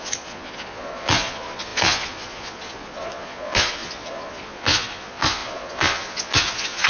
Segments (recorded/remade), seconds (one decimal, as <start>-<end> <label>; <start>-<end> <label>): 0.0-6.9 remade